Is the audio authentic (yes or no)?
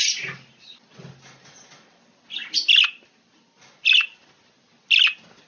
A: yes